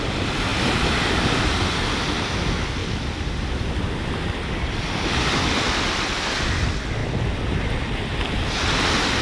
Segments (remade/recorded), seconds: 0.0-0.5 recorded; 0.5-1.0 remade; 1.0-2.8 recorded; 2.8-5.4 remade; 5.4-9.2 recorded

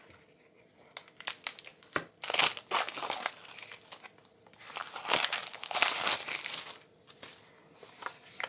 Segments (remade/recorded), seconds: 0.0-1.7 recorded; 1.7-2.4 remade; 2.4-4.8 recorded; 4.8-6.7 remade; 6.7-8.5 recorded

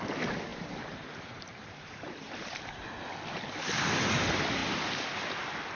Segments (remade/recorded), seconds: 0.0-0.5 recorded; 0.5-3.1 remade; 3.1-5.8 recorded

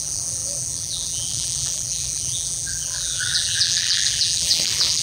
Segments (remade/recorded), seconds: 0.0-5.0 remade